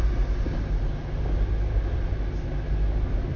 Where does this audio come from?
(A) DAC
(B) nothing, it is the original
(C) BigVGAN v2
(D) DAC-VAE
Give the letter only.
B